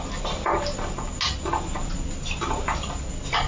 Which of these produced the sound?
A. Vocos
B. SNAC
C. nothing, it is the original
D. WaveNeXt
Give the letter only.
C